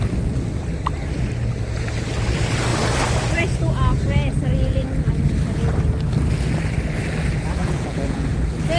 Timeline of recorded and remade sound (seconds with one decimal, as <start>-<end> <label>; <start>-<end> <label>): 0.0-7.6 recorded; 7.6-8.3 remade; 8.3-8.8 recorded

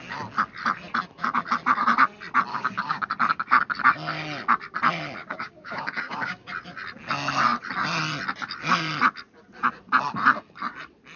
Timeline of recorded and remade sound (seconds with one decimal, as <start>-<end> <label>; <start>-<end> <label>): 0.0-2.5 recorded; 2.5-3.1 remade; 3.1-5.2 recorded; 5.2-6.5 remade; 6.5-11.2 recorded

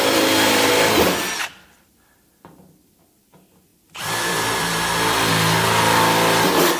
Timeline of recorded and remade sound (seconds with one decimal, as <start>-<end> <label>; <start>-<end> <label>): 0.0-0.7 remade; 0.7-3.7 recorded; 3.7-5.3 remade; 5.3-6.8 recorded

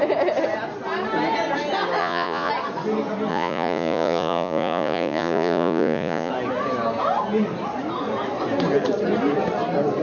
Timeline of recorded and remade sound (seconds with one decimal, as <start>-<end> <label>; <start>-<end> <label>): 0.0-2.0 recorded; 2.0-2.5 remade; 2.5-3.3 recorded; 3.3-6.3 remade; 6.3-10.0 recorded

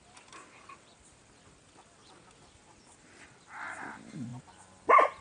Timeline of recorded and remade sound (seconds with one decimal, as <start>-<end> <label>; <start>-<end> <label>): 0.0-5.2 recorded

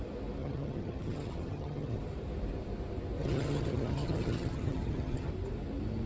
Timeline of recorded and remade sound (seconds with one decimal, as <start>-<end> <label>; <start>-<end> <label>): 0.0-0.4 recorded; 0.4-2.0 remade; 2.0-3.2 recorded; 3.2-5.3 remade; 5.3-6.1 recorded

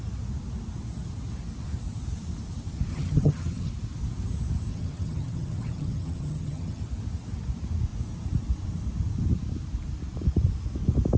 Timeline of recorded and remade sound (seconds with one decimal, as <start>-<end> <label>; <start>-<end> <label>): 0.0-2.9 recorded; 2.9-3.7 remade; 3.7-4.7 recorded; 4.7-6.8 remade; 6.8-11.2 recorded

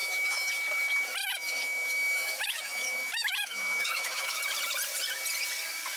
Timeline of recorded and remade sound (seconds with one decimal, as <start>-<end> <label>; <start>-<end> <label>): 0.0-0.5 remade; 0.5-1.2 recorded; 1.2-4.4 remade; 4.4-6.0 recorded